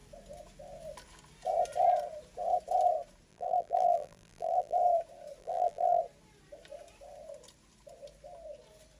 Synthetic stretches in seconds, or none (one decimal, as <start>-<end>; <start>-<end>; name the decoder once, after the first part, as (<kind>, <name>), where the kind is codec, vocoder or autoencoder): 3.3-4.8 (vocoder, BigVGAN v2); 5.4-6.0